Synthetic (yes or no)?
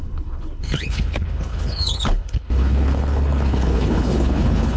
yes